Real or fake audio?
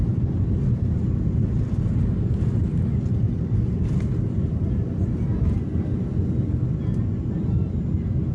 real